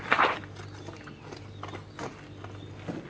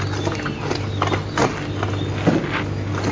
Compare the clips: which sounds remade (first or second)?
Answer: first